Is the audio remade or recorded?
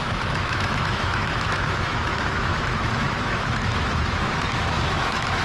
remade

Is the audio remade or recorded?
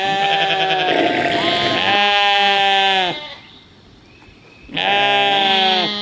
recorded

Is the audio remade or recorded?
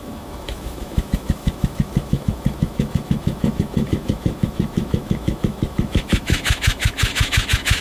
remade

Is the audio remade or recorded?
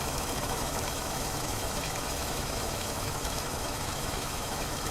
remade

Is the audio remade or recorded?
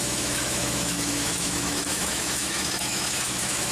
remade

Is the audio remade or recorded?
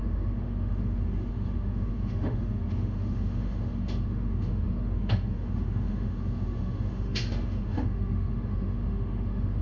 remade